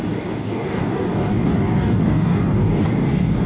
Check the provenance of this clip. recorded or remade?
remade